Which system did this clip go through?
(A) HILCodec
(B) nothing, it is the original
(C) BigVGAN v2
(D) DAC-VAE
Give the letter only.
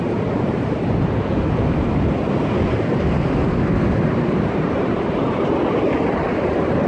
B